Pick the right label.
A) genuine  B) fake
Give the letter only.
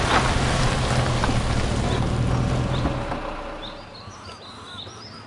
A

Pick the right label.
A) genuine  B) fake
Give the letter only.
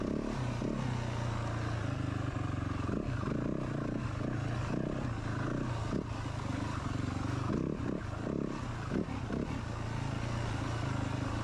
A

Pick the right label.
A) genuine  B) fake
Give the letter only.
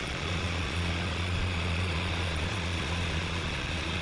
B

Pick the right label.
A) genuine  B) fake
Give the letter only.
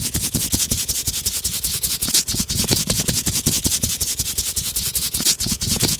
B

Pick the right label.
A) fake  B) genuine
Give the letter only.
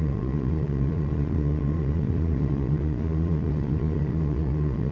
A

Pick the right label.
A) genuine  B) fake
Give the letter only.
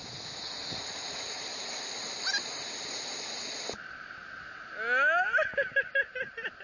A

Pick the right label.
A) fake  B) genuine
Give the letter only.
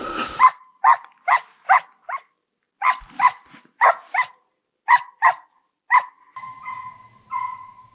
B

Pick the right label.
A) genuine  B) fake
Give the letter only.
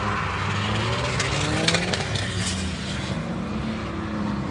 A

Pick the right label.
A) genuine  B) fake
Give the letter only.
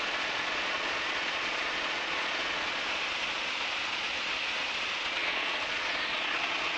B